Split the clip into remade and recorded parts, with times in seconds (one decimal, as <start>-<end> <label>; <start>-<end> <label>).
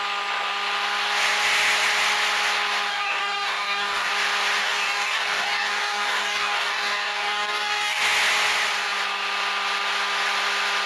0.0-2.9 recorded; 2.9-4.1 remade; 4.1-4.6 recorded; 4.6-8.0 remade; 8.0-10.9 recorded